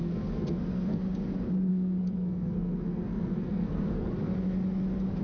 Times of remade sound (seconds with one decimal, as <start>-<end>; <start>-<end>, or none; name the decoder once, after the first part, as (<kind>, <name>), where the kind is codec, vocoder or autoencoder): 0.0-1.0 (codec, SNAC); 1.7-4.1